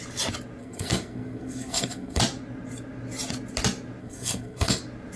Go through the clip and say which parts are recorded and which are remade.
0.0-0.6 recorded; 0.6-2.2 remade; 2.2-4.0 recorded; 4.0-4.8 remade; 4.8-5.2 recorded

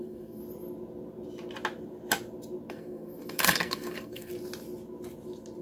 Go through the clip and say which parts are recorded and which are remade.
0.0-0.4 remade; 0.4-2.7 recorded; 2.7-4.3 remade; 4.3-5.6 recorded

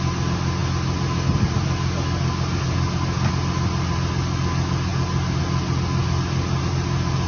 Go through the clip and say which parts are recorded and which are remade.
0.0-7.3 recorded